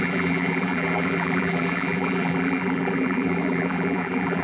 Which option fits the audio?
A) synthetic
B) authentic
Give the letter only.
A